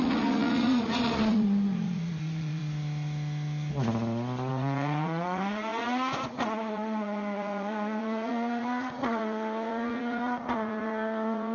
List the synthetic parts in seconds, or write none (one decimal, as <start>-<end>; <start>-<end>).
0.0-2.6; 4.5-11.5